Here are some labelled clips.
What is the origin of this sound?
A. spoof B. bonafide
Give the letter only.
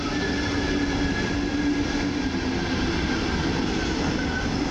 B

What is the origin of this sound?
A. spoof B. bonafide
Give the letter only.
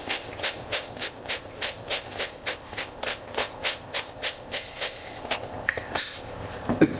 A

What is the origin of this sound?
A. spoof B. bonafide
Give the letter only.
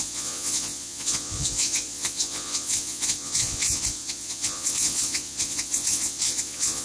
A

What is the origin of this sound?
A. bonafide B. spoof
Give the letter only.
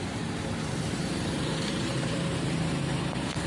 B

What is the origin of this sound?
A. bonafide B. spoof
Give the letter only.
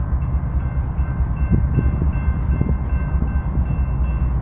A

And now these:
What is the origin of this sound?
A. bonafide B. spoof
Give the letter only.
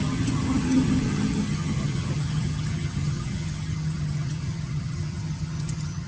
B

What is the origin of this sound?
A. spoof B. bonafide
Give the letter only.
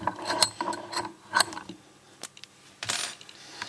B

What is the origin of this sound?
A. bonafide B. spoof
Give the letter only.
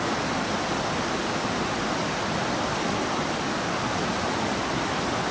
A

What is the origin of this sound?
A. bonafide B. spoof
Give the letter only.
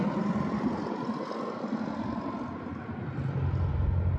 A